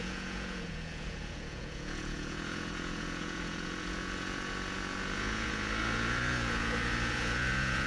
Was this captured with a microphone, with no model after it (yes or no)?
no